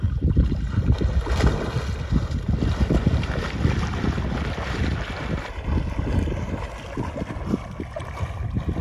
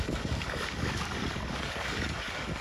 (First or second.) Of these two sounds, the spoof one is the second